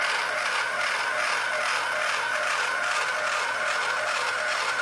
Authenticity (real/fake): real